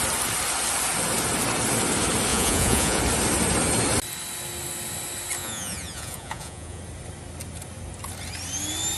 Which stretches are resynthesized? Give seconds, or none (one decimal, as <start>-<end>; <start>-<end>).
2.3-3.0; 5.4-6.8